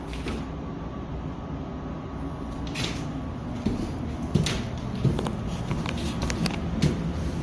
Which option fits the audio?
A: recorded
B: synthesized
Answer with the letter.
A